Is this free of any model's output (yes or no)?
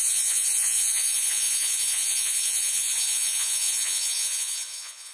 no